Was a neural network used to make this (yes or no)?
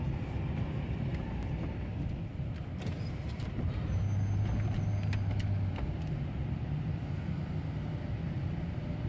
no